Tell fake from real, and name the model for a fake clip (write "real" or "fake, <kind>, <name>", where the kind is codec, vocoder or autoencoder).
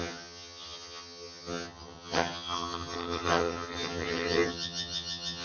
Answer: fake, vocoder, HiFi-GAN